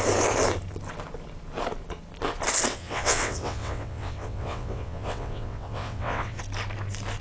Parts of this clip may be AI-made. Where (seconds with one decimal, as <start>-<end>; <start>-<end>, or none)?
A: 2.7-6.4